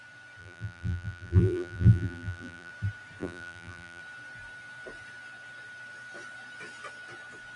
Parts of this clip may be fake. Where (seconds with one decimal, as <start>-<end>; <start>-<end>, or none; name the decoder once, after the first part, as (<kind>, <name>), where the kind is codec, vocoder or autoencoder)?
0.4-2.7 (vocoder, BigVGAN v2); 3.2-4.0